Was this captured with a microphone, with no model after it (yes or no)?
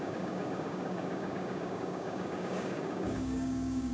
no